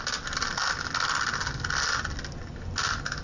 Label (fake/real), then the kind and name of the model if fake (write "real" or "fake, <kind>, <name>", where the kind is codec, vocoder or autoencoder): real